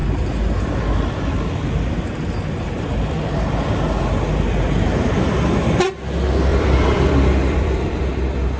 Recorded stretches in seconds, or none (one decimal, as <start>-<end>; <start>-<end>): 0.0-6.5; 8.1-8.6

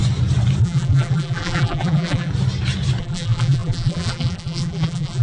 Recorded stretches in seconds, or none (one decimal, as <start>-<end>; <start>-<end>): 0.0-0.6; 2.3-3.0

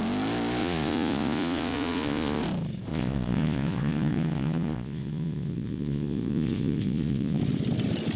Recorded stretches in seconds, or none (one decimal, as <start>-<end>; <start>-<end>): 0.0-0.6; 2.4-2.9; 7.4-8.2

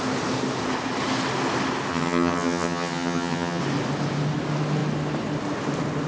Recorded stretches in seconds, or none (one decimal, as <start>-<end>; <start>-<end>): 0.0-1.9; 3.6-6.1